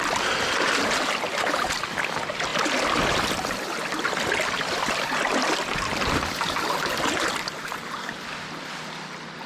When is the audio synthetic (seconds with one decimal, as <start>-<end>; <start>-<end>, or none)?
none